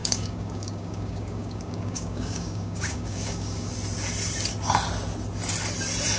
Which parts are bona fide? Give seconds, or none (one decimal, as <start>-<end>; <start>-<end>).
3.7-6.2